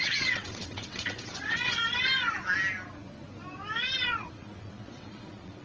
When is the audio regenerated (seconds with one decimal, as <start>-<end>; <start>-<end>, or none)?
0.0-1.8; 4.1-5.6